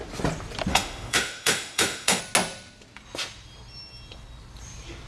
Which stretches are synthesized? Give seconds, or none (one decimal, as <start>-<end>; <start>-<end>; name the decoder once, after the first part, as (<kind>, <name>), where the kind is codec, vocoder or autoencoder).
0.7-2.2 (autoencoder, DAC-VAE)